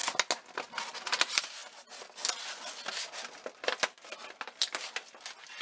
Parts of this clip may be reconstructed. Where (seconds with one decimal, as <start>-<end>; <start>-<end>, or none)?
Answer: none